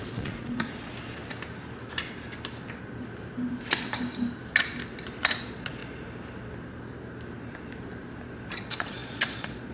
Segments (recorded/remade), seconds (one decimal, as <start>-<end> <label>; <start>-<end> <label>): 0.0-0.7 remade; 0.7-5.2 recorded; 5.2-5.8 remade; 5.8-8.5 recorded; 8.5-9.7 remade